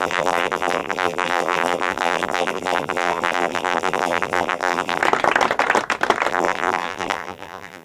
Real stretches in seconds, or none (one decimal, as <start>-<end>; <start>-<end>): 5.0-6.3